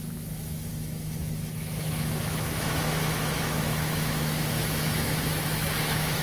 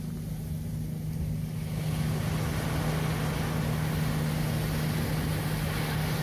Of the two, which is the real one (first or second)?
second